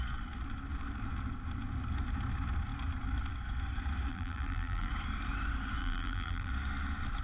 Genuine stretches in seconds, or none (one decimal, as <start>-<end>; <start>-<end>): 0.0-4.1; 4.9-5.8; 6.5-7.2